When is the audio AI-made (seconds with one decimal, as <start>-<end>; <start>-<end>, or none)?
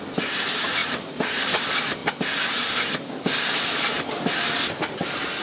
none